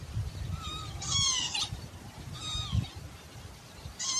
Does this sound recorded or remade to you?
recorded